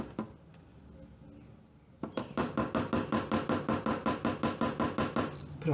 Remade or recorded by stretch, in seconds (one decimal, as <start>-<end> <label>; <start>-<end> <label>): 0.0-5.7 recorded